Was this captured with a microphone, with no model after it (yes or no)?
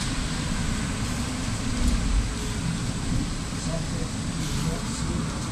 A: yes